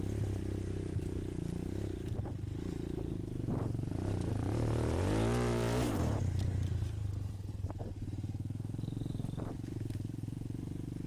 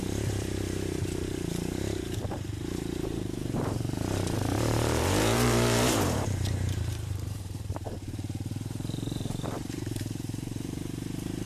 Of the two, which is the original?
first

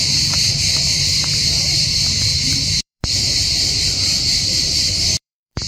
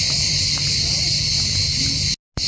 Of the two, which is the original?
second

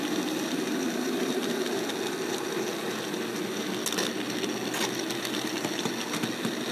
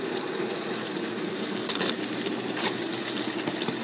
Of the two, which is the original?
first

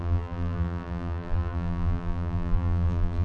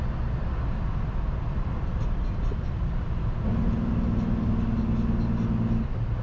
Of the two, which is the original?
second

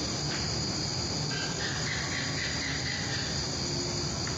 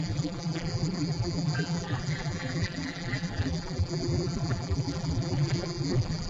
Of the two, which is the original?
first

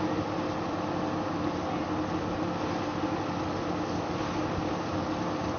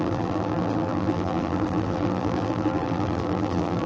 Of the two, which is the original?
first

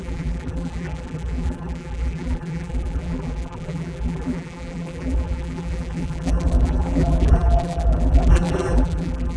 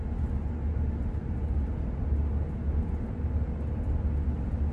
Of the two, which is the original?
second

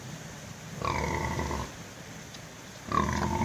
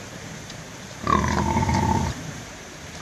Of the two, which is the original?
first